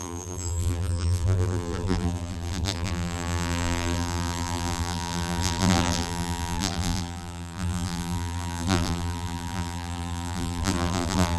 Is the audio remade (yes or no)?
yes